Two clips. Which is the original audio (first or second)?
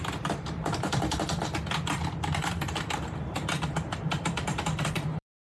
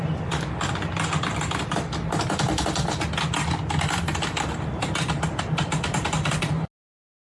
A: second